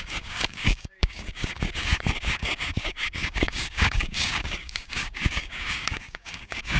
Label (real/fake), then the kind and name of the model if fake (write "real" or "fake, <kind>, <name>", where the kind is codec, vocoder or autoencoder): fake, codec, DAC